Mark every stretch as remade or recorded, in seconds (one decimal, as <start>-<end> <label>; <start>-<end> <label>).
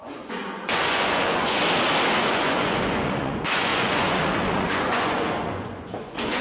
0.0-1.6 remade; 1.6-2.2 recorded; 2.2-6.4 remade